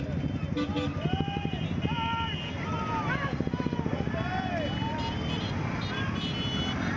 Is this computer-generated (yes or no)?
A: no